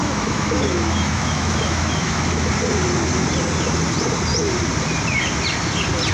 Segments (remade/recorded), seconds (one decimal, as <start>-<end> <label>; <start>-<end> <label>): 0.0-2.5 remade; 2.5-6.1 recorded